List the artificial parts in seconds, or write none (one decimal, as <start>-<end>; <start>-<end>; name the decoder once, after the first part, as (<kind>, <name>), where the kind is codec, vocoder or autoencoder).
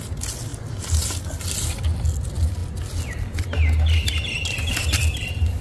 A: none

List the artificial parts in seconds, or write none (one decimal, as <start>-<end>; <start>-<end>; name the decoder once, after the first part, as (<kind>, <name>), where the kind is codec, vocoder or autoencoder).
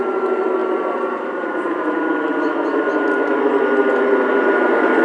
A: none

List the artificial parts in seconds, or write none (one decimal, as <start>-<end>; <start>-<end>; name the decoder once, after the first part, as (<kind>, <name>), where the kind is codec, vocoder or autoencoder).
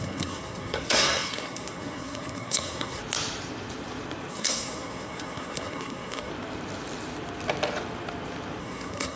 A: 0.0-3.0 (codec, SNAC); 4.3-6.3; 8.6-9.2